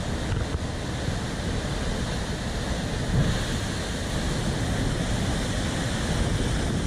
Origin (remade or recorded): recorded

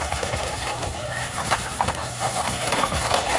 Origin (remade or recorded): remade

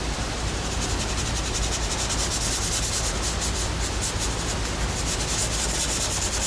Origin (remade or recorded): recorded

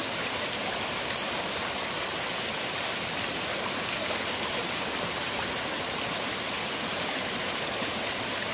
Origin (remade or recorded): recorded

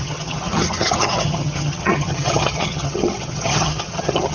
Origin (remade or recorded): remade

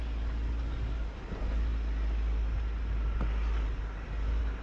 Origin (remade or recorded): recorded